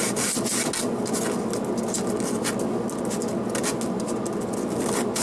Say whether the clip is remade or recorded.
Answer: recorded